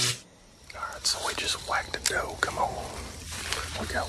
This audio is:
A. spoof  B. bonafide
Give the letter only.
A